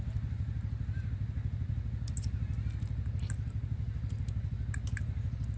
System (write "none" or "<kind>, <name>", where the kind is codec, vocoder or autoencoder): none